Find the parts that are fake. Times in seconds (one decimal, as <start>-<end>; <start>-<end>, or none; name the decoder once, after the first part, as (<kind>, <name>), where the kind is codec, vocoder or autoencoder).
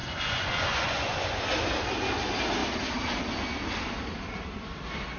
0.0-1.4 (vocoder, Vocos)